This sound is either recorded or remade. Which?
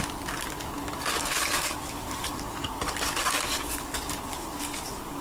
remade